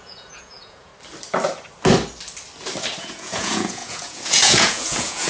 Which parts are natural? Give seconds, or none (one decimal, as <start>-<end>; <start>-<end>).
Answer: 0.9-3.0